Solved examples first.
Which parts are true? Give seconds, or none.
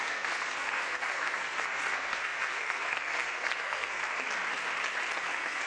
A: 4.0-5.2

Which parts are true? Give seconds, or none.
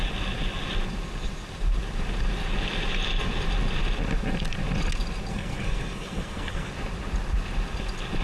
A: 0.0-5.3; 6.7-8.2